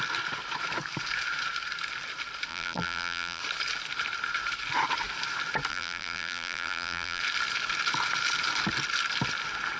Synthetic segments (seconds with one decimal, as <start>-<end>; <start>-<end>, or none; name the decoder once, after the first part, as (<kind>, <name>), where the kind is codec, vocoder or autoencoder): 2.5-3.4 (vocoder, BigVGAN v2); 5.7-7.2